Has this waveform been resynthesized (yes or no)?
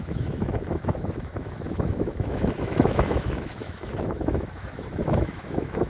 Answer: yes